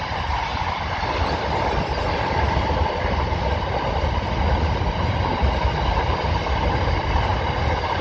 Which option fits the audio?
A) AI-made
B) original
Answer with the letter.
B